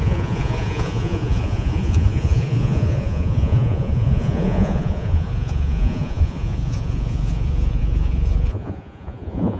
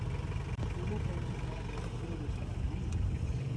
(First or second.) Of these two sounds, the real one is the second